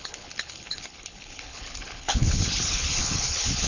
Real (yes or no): no